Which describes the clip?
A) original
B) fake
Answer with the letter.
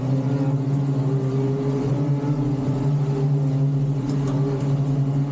A